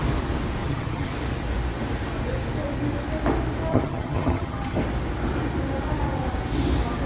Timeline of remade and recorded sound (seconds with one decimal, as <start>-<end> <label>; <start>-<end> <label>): 0.0-0.6 recorded; 0.6-1.1 remade; 1.1-3.7 recorded; 3.7-4.8 remade; 4.8-7.1 recorded